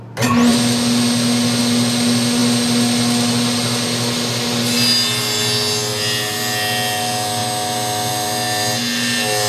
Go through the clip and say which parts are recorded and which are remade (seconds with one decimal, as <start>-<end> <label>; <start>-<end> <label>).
0.0-9.5 recorded